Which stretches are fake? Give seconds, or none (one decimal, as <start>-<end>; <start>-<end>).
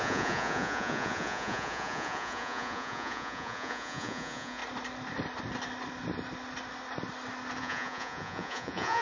0.0-4.6; 7.6-9.0